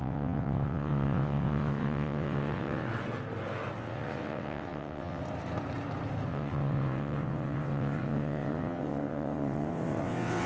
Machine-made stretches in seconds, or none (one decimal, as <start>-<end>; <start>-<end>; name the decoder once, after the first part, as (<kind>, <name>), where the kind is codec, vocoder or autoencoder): 0.0-2.9 (vocoder, WaveNeXt); 3.8-5.2; 6.3-10.5